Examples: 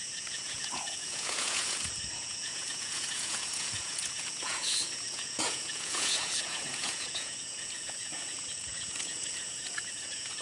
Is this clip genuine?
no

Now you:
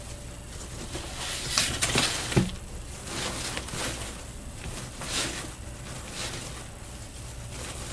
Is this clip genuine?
yes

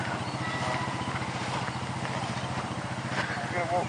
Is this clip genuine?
yes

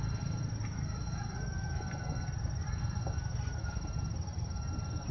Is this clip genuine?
yes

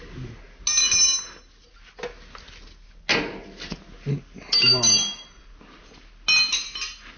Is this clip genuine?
yes